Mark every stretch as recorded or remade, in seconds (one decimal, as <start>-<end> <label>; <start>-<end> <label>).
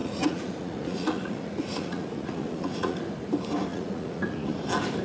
0.0-3.0 remade; 3.0-3.7 recorded; 3.7-4.6 remade; 4.6-5.0 recorded